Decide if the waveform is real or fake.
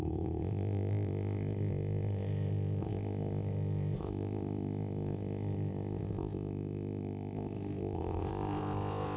fake